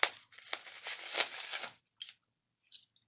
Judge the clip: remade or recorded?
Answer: recorded